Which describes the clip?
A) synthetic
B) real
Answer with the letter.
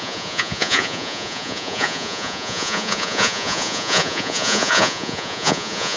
A